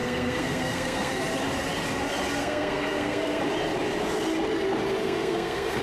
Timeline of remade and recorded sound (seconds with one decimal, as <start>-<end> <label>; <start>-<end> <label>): 0.0-1.1 remade; 1.1-2.4 recorded; 2.4-3.4 remade; 3.4-5.0 recorded; 5.0-5.8 remade